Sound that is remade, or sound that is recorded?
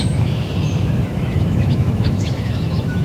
remade